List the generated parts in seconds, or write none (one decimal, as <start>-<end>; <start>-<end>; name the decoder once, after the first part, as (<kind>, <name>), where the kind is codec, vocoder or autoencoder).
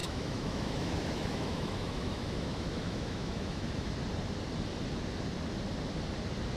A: 0.0-3.9 (autoencoder, DAC-VAE)